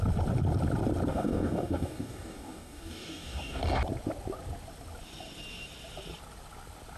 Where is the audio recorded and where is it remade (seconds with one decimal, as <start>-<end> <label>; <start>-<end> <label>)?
0.0-1.1 recorded; 1.1-3.6 remade; 3.6-7.0 recorded